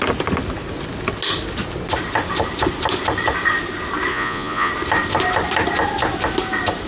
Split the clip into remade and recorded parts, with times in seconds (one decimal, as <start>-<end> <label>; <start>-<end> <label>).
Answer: 0.0-4.1 recorded; 4.1-4.7 remade; 4.7-6.9 recorded